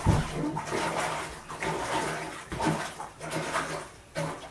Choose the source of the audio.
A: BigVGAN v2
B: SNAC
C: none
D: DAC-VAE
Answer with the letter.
C